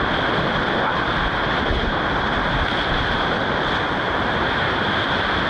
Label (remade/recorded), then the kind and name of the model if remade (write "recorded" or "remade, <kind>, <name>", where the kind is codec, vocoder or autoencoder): recorded